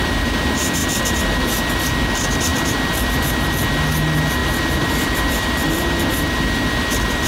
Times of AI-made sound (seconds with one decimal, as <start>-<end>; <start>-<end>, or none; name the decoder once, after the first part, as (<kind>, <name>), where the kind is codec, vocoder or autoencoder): 2.5-3.3 (vocoder, BigVGAN v2); 4.4-6.2